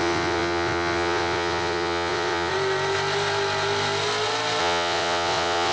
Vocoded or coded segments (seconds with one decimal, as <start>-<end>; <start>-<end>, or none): 0.0-2.5; 4.6-5.7